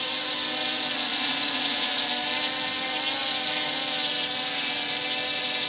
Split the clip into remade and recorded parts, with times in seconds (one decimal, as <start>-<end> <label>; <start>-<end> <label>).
0.0-1.1 recorded; 1.1-1.9 remade; 1.9-5.7 recorded